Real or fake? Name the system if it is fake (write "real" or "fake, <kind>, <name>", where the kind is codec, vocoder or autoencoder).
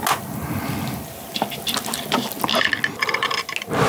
real